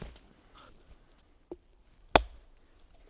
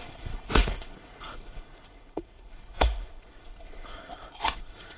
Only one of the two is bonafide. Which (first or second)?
first